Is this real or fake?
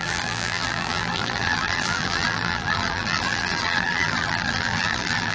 fake